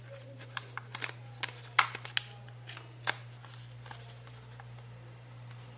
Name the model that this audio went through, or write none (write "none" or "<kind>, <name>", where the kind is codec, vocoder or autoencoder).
none